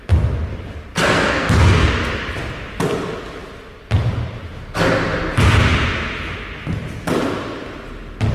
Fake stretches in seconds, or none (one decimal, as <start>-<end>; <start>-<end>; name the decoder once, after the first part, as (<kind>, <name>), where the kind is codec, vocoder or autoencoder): 0.9-1.9 (codec, SNAC)